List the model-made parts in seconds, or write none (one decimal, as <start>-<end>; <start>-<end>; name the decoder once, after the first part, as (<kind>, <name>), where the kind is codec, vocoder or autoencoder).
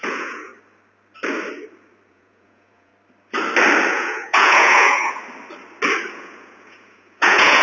0.0-0.5 (vocoder, Vocos); 2.1-2.9; 3.9-5.2; 6.1-7.6